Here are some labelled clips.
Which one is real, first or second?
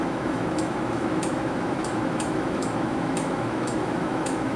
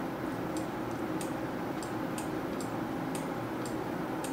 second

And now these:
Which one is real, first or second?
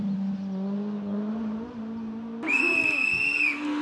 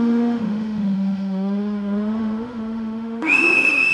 first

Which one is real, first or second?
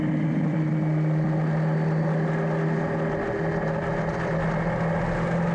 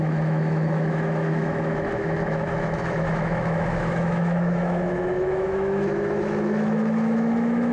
first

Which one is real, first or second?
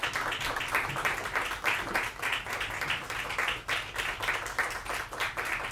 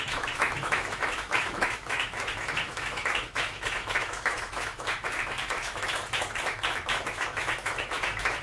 first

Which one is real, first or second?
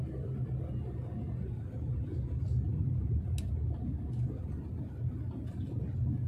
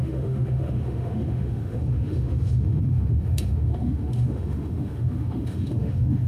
first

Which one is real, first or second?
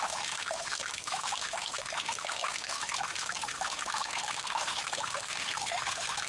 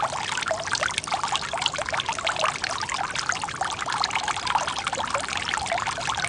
second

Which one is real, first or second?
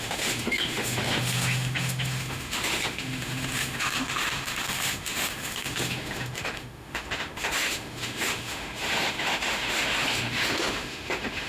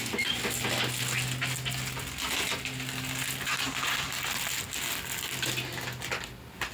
second